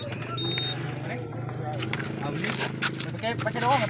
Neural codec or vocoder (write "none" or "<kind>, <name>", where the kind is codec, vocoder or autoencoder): none